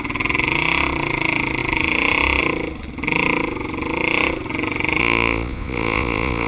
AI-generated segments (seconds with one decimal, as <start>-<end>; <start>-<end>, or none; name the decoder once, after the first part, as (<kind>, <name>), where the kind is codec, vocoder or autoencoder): 5.0-6.5 (vocoder, Vocos)